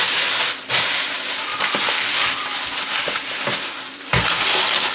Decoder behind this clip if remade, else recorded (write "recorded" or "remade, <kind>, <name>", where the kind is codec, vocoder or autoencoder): recorded